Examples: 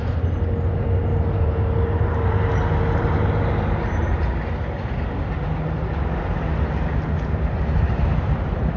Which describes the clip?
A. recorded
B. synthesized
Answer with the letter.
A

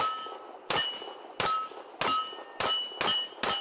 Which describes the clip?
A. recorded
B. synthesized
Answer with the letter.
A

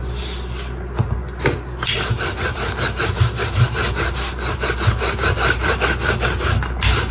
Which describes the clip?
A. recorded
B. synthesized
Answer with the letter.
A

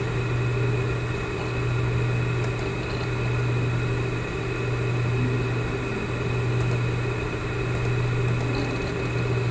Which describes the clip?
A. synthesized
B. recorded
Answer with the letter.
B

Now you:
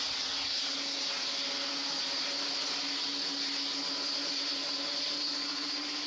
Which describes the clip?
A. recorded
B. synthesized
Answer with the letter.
A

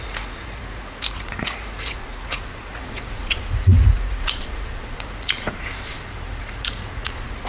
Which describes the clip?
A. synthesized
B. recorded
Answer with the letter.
A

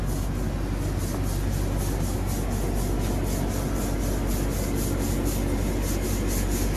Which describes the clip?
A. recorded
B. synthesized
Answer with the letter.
A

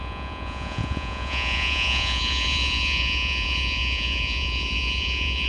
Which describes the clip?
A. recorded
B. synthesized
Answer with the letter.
B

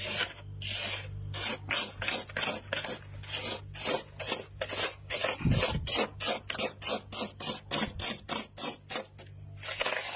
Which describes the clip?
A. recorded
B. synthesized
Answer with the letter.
A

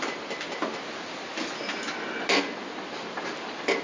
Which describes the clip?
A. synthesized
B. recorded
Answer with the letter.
B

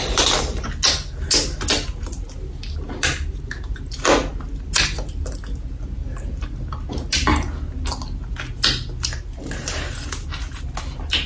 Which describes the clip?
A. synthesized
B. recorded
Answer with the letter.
B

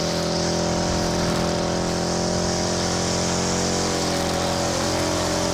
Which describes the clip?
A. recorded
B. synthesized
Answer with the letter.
A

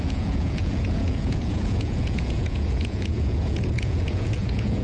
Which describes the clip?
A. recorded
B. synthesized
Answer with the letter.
B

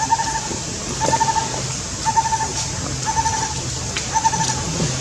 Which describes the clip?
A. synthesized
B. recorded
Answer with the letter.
B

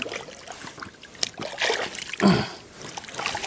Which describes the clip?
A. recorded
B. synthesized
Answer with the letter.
A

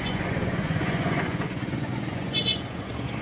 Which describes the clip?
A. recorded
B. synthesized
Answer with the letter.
B